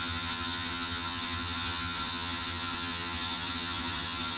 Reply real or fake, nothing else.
fake